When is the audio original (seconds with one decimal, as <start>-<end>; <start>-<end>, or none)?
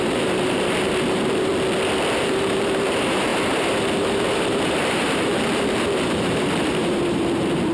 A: 1.5-2.2